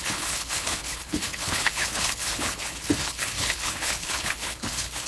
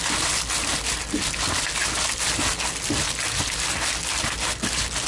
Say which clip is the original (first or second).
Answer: second